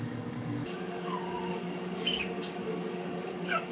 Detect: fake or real fake